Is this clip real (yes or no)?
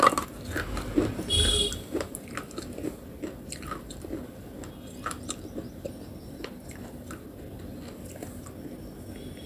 yes